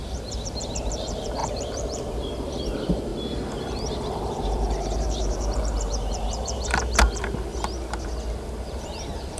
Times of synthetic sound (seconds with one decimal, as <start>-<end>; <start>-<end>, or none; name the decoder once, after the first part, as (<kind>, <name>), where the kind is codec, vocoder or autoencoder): 0.0-3.1 (vocoder, BigVGAN v2); 3.6-7.5; 8.6-9.4